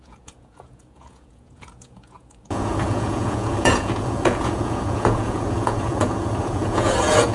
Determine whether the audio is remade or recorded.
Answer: remade